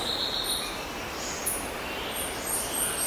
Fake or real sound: fake